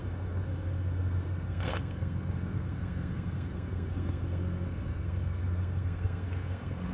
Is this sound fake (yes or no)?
yes